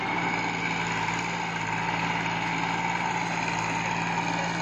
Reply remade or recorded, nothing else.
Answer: recorded